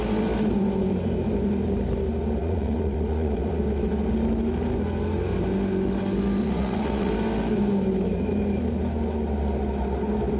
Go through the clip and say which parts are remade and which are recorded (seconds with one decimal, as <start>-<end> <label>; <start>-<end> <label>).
0.0-2.4 recorded; 2.4-3.6 remade; 3.6-6.4 recorded; 6.4-7.1 remade; 7.1-10.4 recorded